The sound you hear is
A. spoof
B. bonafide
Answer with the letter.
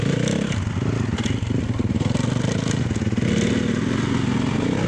B